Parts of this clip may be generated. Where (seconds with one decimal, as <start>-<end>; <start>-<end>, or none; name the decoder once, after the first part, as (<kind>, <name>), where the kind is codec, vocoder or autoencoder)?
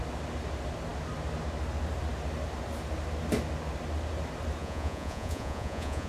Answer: 4.6-6.1 (vocoder, Vocos)